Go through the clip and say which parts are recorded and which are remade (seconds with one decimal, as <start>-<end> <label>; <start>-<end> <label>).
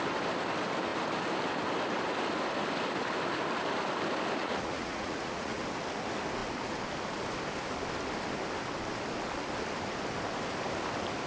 0.0-4.4 recorded; 4.4-5.6 remade; 5.6-11.3 recorded